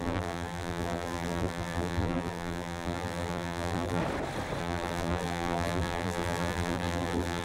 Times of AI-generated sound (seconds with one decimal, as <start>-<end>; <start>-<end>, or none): 0.0-4.0; 4.6-7.4